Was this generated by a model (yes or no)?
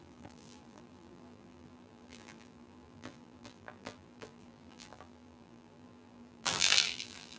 yes